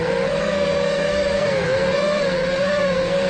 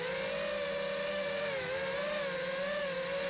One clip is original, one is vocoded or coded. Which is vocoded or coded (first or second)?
first